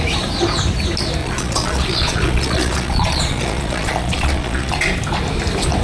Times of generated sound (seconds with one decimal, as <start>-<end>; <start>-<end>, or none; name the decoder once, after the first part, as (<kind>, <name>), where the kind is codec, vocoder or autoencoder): 1.2-4.7 (vocoder, Vocos)